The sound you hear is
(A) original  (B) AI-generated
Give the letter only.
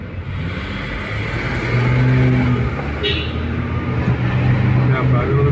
A